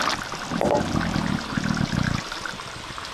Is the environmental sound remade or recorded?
recorded